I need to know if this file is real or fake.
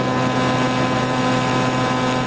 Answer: real